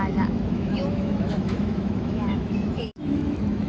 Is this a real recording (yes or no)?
no